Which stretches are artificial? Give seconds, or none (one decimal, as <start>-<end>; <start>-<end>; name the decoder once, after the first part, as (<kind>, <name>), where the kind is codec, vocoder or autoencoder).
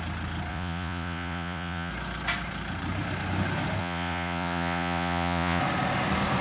0.5-1.9 (vocoder, Vocos); 3.8-5.6